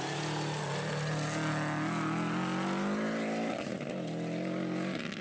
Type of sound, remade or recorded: recorded